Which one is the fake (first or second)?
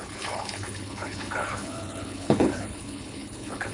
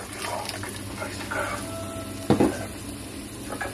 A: first